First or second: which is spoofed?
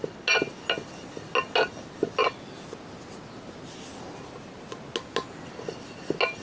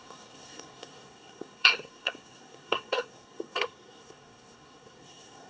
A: second